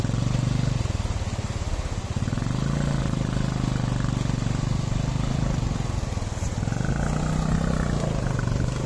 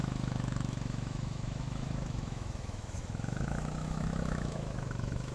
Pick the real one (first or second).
first